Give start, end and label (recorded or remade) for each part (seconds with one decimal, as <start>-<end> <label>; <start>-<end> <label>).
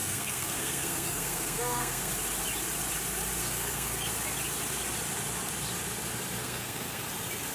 0.0-2.1 remade; 2.1-3.4 recorded; 3.4-4.1 remade; 4.1-6.4 recorded; 6.4-7.0 remade; 7.0-7.5 recorded